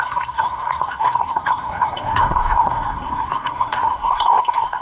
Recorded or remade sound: remade